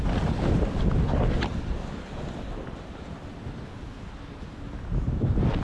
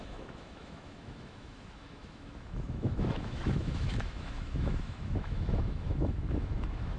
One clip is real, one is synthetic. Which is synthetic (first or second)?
second